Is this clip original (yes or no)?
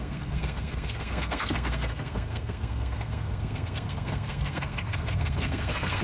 no